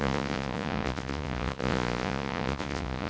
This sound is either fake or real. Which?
fake